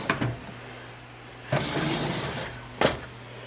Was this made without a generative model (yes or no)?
yes